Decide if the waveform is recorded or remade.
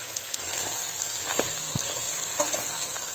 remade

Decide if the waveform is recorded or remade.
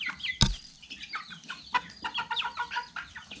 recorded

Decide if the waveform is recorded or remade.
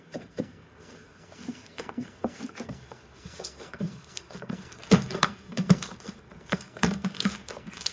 remade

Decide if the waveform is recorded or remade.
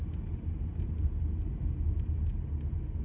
recorded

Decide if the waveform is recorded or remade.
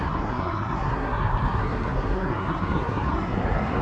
remade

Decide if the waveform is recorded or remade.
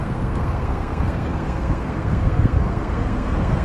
remade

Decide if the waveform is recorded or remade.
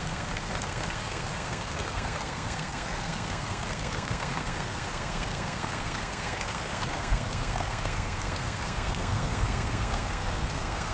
remade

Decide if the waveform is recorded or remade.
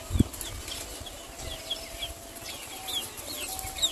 recorded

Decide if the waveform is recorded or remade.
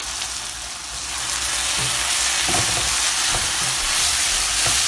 recorded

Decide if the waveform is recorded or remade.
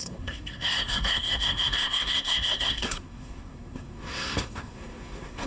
remade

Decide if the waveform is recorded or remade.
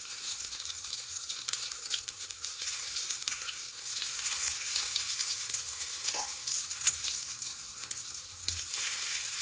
remade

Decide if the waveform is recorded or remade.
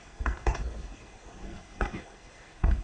remade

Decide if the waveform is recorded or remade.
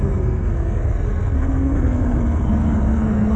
remade